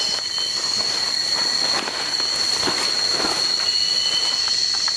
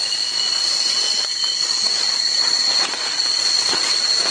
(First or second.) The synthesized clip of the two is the second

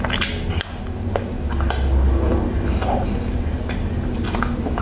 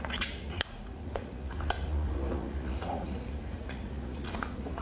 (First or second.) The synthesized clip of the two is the second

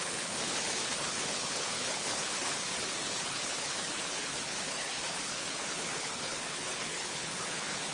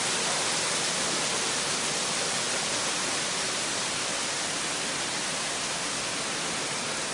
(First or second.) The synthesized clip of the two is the first